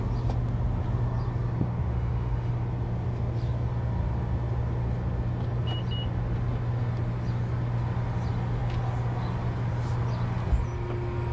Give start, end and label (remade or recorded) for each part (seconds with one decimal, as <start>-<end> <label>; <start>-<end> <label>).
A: 0.0-1.9 recorded; 1.9-2.5 remade; 2.5-11.3 recorded